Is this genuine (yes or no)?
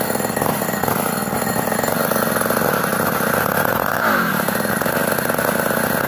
yes